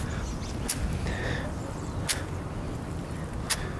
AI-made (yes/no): no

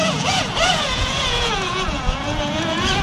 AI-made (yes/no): yes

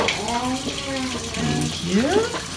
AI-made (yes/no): no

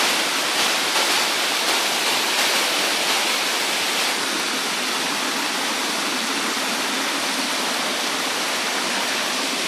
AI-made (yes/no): no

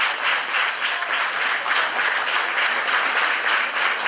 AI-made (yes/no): no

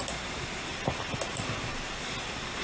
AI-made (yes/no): no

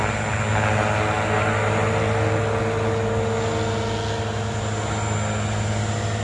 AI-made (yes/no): no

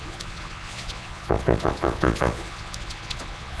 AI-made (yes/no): yes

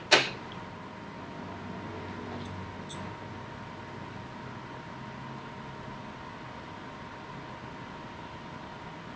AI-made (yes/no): no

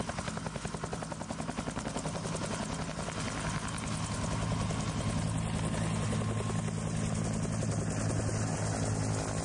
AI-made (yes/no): no